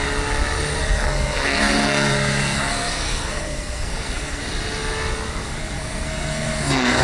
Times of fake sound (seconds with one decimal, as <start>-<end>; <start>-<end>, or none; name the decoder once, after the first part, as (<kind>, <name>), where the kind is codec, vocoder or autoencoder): 0.8-4.4 (codec, SNAC); 5.4-7.0